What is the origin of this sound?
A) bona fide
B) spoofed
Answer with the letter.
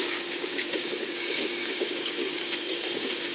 B